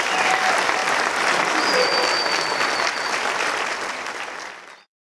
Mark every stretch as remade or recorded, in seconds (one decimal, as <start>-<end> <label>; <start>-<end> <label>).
0.0-5.2 recorded